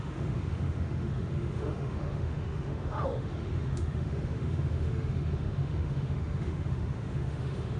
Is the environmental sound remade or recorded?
remade